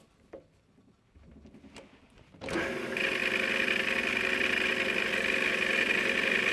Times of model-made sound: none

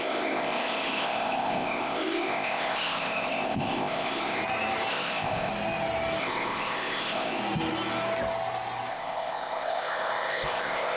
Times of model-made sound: 0.0-4.4 (codec, ZipCodec); 4.9-5.5; 6.2-7.4; 8.9-11.0

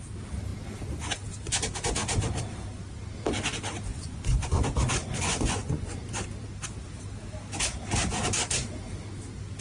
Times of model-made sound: 3.9-4.6 (vocoder, Vocos); 5.0-6.1

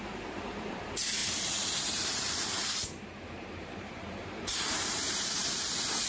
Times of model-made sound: 0.0-6.1 (vocoder, BigVGAN v2)